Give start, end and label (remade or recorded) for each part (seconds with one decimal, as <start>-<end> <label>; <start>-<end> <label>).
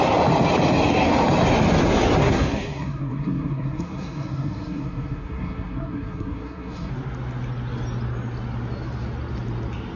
0.0-2.2 recorded; 2.2-6.9 remade; 6.9-10.0 recorded